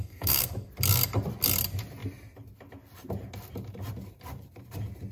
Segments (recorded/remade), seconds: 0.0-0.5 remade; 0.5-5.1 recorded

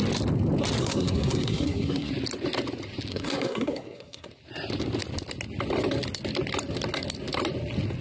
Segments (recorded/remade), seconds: 0.0-0.8 recorded; 0.8-2.1 remade; 2.1-3.1 recorded; 3.1-4.3 remade; 4.3-8.0 recorded

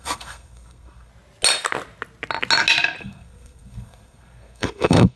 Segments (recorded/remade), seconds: 0.0-1.1 remade; 1.1-3.0 recorded; 3.0-5.2 remade